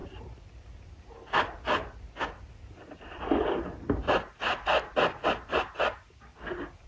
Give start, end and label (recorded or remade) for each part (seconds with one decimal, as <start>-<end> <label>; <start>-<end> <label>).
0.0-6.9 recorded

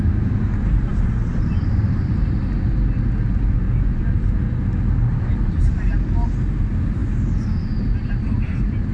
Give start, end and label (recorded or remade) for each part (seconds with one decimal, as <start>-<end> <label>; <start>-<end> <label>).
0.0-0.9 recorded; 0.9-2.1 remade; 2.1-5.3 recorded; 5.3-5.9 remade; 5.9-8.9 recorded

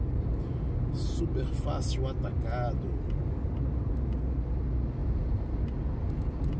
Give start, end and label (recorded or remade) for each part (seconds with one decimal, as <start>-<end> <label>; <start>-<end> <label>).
0.0-5.0 recorded; 5.0-5.6 remade; 5.6-6.6 recorded

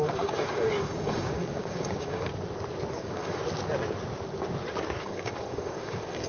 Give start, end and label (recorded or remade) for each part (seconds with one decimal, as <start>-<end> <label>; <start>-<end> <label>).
0.0-2.3 remade; 2.3-2.9 recorded; 2.9-3.4 remade; 3.4-5.0 recorded; 5.0-6.3 remade